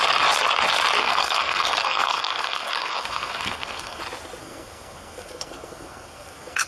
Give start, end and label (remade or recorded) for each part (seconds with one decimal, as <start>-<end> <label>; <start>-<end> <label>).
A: 0.0-1.0 recorded; 1.0-4.0 remade; 4.0-4.4 recorded; 4.4-6.7 remade

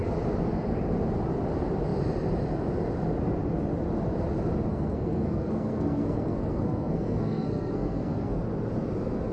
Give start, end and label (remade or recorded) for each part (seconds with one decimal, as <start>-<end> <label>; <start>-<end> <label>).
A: 0.0-4.7 recorded; 4.7-8.4 remade; 8.4-9.3 recorded

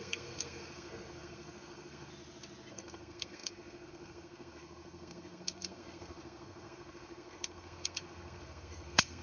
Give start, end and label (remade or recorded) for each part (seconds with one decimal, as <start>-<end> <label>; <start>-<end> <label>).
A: 0.0-2.1 remade; 2.1-2.7 recorded; 2.7-9.2 remade

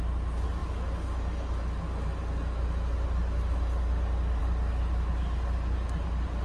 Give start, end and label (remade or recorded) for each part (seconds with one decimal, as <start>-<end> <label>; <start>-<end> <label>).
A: 0.0-6.4 recorded

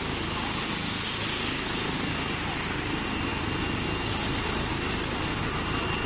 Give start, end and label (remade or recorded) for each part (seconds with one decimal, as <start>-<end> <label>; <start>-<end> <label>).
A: 0.0-6.1 recorded

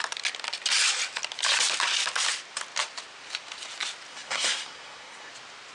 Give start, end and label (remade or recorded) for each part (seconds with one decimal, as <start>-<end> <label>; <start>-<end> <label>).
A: 0.0-4.1 recorded; 4.1-5.3 remade; 5.3-5.7 recorded

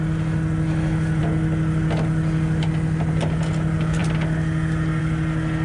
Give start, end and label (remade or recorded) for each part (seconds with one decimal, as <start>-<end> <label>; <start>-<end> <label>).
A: 0.0-5.6 recorded